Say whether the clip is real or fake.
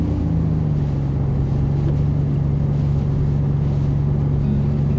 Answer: real